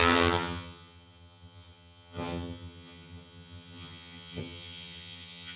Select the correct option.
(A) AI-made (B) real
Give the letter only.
A